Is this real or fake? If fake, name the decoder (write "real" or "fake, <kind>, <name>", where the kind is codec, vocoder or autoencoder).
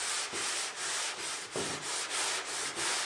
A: real